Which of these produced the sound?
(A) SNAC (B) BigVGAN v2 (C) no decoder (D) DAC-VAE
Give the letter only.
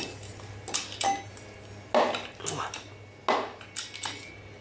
C